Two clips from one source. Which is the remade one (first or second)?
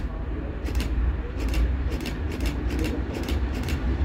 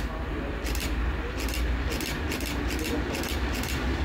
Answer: first